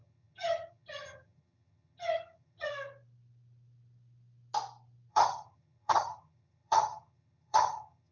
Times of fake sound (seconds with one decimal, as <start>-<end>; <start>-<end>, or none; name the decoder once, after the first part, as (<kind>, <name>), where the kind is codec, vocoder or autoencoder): 0.0-2.7 (vocoder, HiFi-GAN); 5.1-8.1